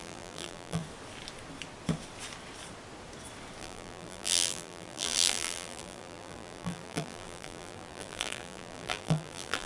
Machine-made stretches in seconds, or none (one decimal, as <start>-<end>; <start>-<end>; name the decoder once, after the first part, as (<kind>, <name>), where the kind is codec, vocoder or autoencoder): 0.0-0.8 (vocoder, BigVGAN v2); 3.6-9.7